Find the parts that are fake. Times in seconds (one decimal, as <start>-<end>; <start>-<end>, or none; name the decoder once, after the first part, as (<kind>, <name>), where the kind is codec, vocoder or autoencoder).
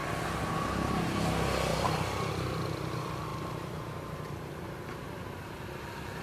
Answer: 1.7-2.3 (vocoder, BigVGAN v2)